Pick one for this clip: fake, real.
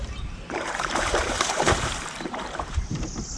fake